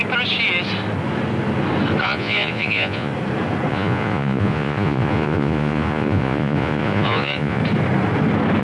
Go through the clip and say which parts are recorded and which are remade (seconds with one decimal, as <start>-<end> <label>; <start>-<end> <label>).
0.0-2.0 recorded; 2.0-3.1 remade; 3.1-3.7 recorded; 3.7-7.6 remade; 7.6-8.6 recorded

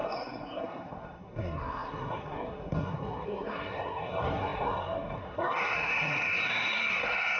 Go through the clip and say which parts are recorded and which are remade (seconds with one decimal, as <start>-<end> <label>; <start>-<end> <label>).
0.0-7.4 remade